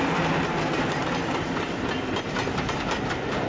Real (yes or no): yes